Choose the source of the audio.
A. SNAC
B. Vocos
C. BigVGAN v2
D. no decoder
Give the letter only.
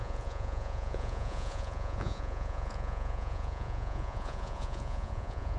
B